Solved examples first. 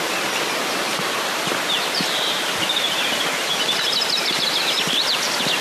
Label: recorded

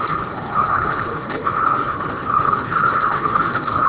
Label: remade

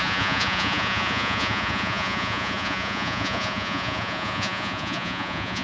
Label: remade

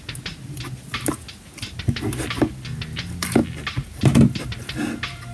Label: recorded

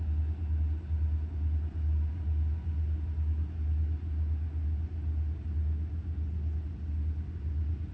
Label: recorded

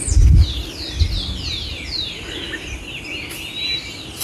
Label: recorded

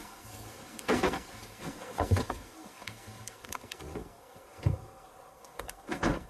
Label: remade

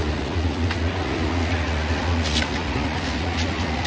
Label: remade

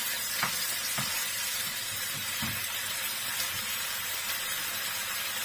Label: remade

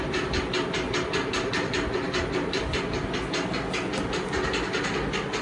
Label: recorded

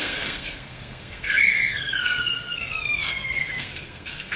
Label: remade